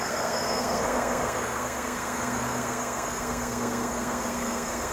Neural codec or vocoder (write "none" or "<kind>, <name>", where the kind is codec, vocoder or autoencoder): codec, SNAC